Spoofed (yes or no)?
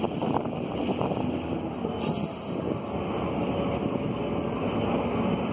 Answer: no